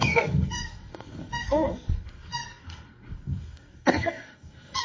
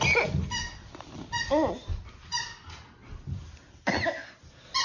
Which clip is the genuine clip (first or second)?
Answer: second